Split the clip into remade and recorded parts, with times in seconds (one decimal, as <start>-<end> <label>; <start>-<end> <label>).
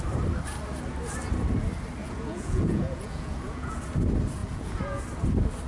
0.0-2.0 recorded; 2.0-3.8 remade; 3.8-4.4 recorded; 4.4-5.0 remade; 5.0-5.7 recorded